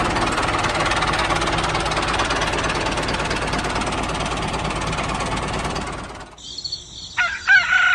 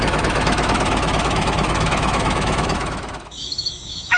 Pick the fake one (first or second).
second